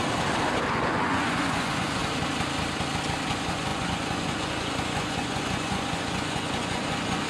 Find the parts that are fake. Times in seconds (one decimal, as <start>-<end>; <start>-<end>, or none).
0.7-2.0; 3.3-7.3